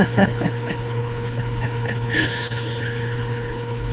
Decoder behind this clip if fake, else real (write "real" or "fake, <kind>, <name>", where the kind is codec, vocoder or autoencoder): fake, codec, HILCodec